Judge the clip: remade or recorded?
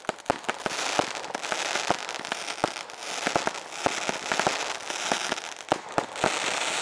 recorded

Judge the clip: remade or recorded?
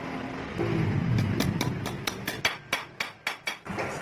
recorded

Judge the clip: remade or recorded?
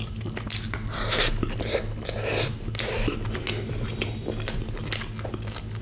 recorded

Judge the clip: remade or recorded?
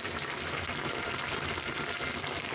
recorded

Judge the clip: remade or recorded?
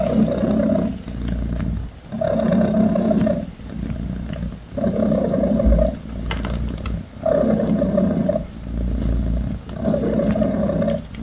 recorded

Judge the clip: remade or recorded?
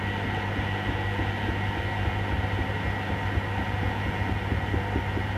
recorded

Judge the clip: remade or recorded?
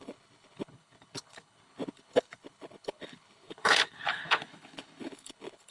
remade